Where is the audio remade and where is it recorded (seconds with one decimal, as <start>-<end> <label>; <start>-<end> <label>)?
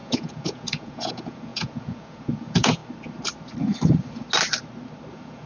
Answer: 0.0-2.8 remade; 2.8-5.1 recorded; 5.1-5.5 remade